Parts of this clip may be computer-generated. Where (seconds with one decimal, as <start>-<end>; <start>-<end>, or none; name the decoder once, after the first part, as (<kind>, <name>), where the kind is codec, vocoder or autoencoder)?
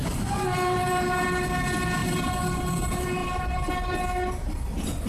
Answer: 2.0-2.6 (vocoder, BigVGAN v2); 3.2-3.7